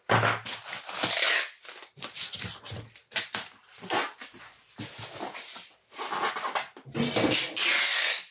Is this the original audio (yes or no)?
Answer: yes